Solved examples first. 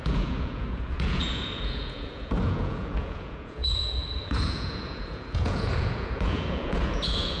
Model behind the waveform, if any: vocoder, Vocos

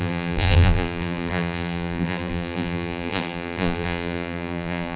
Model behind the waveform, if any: vocoder, BigVGAN v2